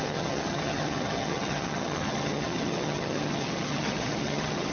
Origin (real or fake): fake